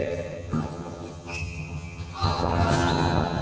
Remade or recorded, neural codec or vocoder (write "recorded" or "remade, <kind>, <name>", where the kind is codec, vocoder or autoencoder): remade, vocoder, HiFi-GAN